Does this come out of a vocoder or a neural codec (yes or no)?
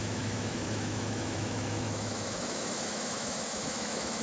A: yes